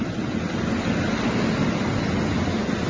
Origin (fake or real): real